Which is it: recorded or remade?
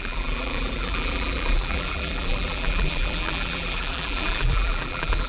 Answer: remade